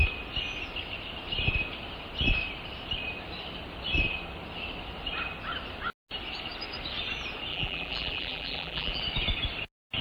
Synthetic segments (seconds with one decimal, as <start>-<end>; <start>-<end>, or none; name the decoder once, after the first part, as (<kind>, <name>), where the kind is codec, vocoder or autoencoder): 7.5-9.0 (vocoder, BigVGAN v2)